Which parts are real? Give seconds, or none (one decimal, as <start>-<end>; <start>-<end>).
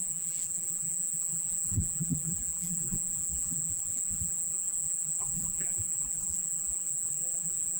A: none